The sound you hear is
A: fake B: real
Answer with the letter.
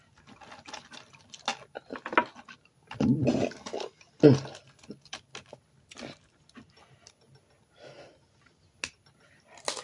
B